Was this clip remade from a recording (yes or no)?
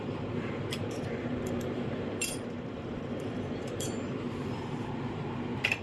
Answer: yes